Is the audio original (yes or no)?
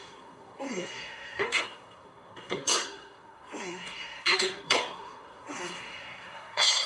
no